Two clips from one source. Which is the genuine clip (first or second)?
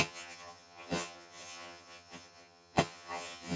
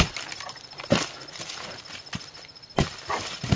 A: second